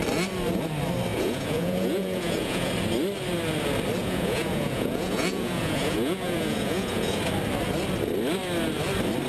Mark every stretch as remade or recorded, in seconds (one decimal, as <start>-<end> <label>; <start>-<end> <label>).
0.0-1.1 recorded; 1.1-2.7 remade; 2.7-4.0 recorded; 4.0-7.2 remade; 7.2-9.3 recorded